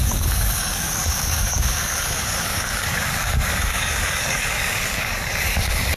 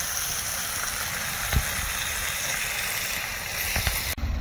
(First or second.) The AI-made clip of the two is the first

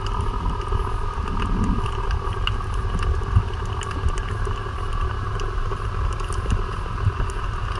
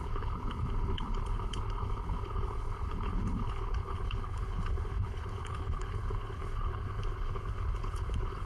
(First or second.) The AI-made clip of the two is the second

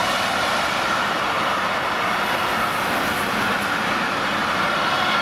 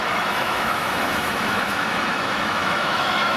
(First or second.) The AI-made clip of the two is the second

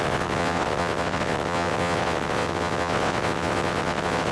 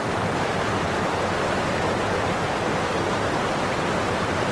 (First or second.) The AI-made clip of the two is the first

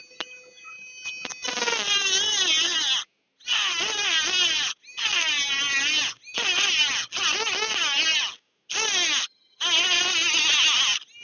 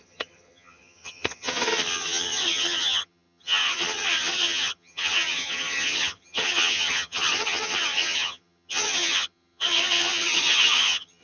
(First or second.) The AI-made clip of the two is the second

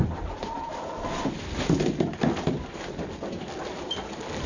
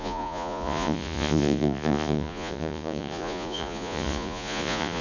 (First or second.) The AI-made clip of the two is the second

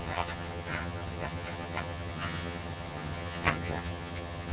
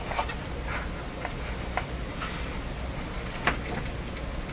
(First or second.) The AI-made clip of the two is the first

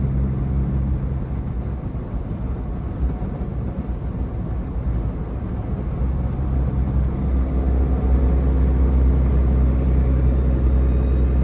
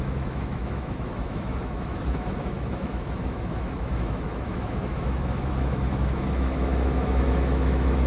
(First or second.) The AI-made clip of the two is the second